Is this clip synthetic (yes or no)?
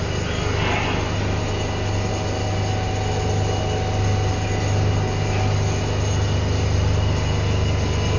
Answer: no